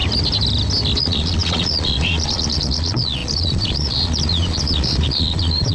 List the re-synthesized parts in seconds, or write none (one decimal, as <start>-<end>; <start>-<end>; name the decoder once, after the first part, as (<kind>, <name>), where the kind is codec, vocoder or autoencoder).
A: 1.0-5.7 (vocoder, Vocos)